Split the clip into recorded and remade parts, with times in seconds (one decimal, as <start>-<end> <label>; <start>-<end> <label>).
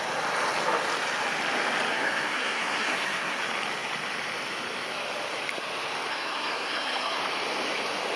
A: 0.0-1.9 recorded; 1.9-3.4 remade; 3.4-6.1 recorded; 6.1-7.2 remade; 7.2-8.2 recorded